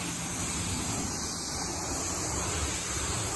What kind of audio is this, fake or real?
fake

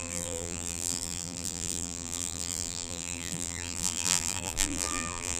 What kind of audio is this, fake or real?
fake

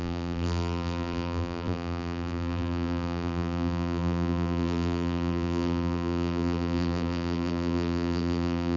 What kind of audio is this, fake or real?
fake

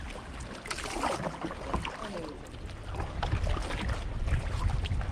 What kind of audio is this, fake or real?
real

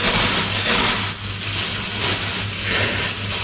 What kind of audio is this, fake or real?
real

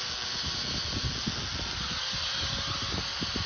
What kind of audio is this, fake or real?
real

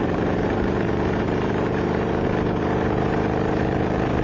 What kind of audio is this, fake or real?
fake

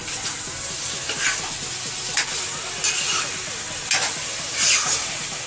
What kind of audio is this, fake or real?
real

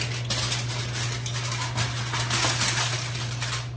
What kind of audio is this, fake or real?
real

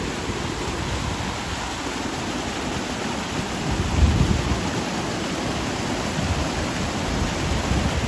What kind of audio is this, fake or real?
real